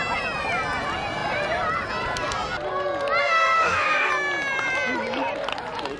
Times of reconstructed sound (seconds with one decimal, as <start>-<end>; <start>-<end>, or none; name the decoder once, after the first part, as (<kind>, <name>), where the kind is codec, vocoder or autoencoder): 3.2-4.1 (codec, DAC)